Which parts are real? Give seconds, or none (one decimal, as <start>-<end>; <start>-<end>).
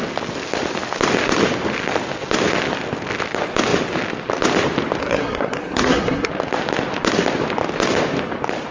0.0-5.0; 6.3-8.7